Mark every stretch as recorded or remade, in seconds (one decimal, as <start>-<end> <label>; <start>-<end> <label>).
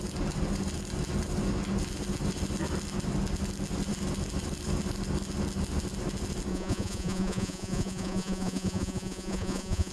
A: 0.0-6.5 recorded; 6.5-9.9 remade